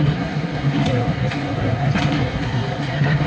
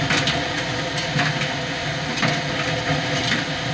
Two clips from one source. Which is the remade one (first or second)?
first